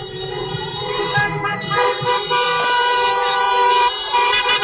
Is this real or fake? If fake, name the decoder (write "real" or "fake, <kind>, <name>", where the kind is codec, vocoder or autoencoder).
fake, vocoder, BigVGAN v2